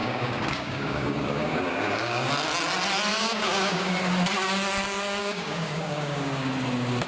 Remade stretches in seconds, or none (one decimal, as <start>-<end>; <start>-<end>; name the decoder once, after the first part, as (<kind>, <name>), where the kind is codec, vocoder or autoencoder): 0.0-2.3 (codec, DAC); 3.1-3.9; 5.2-6.5